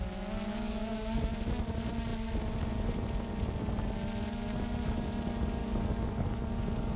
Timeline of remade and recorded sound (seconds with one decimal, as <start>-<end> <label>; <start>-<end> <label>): 0.0-0.5 recorded; 0.5-1.3 remade; 1.3-5.6 recorded; 5.6-6.4 remade; 6.4-7.0 recorded